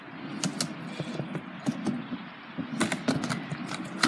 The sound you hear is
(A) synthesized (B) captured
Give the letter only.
B